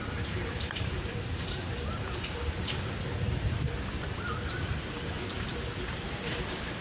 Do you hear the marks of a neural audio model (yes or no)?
yes